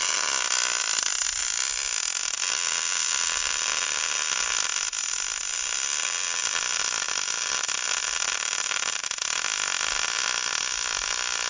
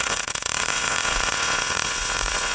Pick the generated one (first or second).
second